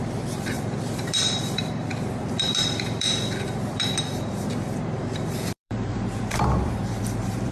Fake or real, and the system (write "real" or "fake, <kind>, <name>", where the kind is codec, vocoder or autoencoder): fake, vocoder, BigVGAN v2